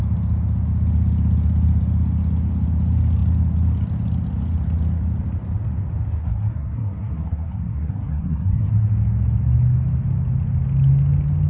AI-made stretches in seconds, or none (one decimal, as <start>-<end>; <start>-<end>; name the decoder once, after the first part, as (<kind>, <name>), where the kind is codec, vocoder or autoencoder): 6.2-8.7 (codec, SNAC)